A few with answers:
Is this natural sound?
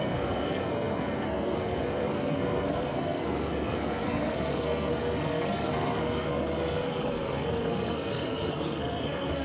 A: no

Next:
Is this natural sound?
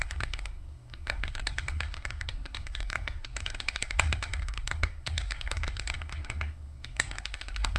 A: no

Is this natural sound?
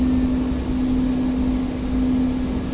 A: yes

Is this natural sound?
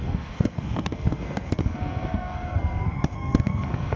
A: no